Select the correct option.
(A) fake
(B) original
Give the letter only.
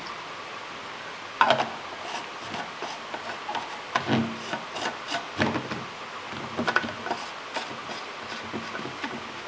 B